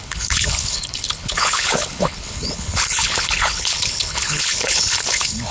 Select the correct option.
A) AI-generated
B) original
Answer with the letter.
A